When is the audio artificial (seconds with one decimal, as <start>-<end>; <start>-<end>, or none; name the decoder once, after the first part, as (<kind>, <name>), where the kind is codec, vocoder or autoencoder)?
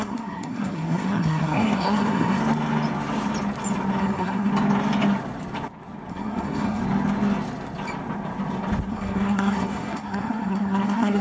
0.0-2.4 (codec, SNAC); 4.0-4.5; 6.1-6.8; 8.9-11.2